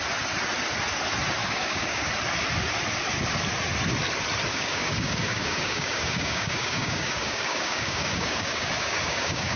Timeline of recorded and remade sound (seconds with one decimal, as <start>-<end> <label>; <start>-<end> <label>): 0.0-1.4 recorded; 1.4-2.1 remade; 2.1-4.5 recorded; 4.5-9.6 remade